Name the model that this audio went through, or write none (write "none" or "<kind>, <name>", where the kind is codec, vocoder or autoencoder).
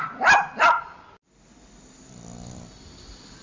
none